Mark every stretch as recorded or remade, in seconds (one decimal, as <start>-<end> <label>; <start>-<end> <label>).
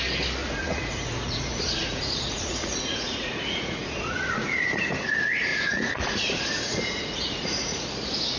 0.0-0.4 recorded; 0.4-5.1 remade; 5.1-5.5 recorded; 5.5-7.8 remade; 7.8-8.4 recorded